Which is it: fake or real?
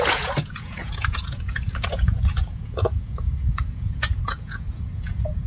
fake